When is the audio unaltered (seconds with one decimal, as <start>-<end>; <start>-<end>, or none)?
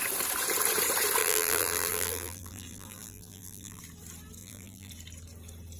0.0-1.2; 3.8-4.4; 4.9-5.8